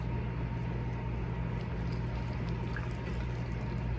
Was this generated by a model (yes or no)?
no